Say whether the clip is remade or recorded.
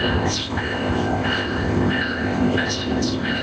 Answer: remade